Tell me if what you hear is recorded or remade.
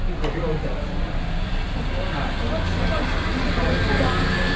recorded